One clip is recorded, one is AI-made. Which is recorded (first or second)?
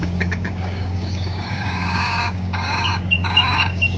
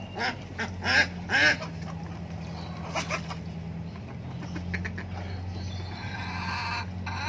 second